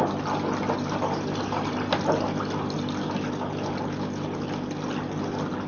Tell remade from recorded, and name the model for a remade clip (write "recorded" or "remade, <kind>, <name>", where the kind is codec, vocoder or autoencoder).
recorded